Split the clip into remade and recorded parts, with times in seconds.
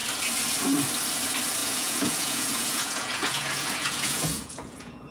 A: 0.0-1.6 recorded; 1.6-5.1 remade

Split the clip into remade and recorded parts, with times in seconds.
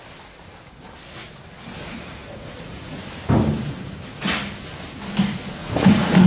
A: 0.0-1.8 recorded; 1.8-3.0 remade; 3.0-5.6 recorded; 5.6-6.3 remade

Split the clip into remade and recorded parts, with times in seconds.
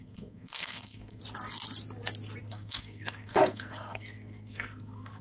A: 0.0-1.2 remade; 1.2-2.4 recorded; 2.4-5.2 remade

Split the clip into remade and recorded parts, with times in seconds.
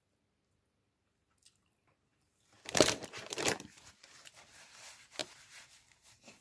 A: 0.0-2.1 recorded; 2.1-4.4 remade; 4.4-5.2 recorded; 5.2-6.4 remade